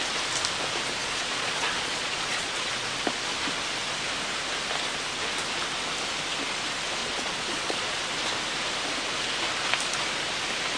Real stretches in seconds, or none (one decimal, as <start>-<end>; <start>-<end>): 0.0-1.0; 2.7-7.0; 8.0-10.8